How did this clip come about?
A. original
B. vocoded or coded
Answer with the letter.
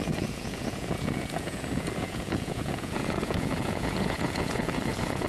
B